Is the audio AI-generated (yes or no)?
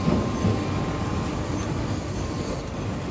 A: no